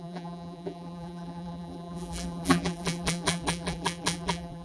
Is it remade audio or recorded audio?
remade